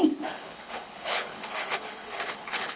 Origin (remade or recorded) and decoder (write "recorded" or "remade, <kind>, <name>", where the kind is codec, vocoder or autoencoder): remade, codec, HILCodec